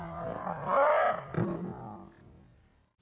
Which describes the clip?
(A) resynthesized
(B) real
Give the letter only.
A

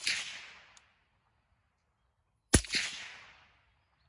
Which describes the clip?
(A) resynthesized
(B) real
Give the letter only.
B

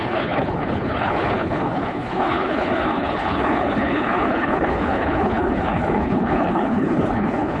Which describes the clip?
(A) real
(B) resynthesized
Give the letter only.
B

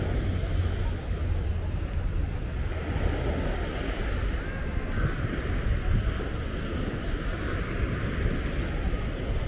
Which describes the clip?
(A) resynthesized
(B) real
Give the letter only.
B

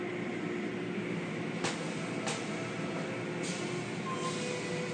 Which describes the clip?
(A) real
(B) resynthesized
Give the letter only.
A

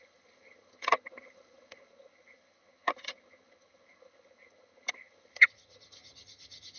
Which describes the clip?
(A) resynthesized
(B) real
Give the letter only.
A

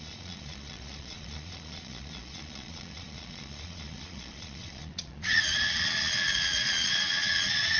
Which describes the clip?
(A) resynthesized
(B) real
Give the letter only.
A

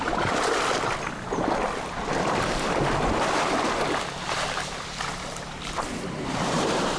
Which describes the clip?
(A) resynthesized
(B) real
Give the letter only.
B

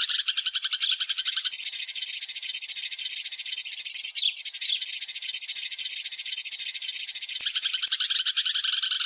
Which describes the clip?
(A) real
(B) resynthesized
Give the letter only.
A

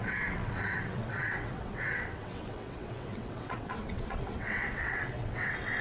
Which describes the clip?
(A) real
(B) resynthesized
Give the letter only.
B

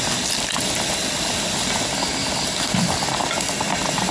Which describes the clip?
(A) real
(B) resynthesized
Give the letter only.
A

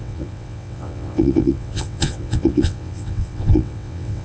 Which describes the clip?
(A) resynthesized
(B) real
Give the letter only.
A